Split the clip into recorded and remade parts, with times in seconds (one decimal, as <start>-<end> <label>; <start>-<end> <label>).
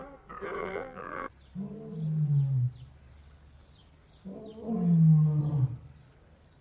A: 0.0-0.6 recorded; 0.6-1.3 remade; 1.3-6.6 recorded